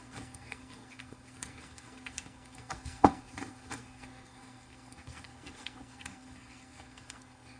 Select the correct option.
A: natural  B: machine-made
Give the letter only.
B